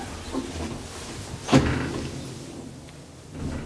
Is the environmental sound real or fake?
real